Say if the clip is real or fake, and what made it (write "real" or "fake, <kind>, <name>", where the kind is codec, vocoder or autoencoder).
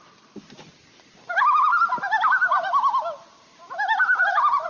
real